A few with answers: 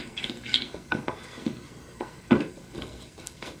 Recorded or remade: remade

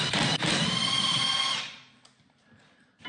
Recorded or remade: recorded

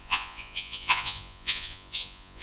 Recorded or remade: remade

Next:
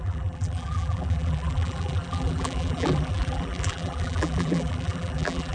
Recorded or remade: remade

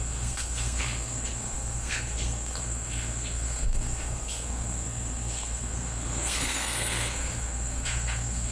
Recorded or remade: remade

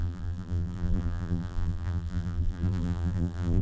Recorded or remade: remade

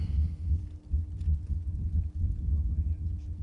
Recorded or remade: recorded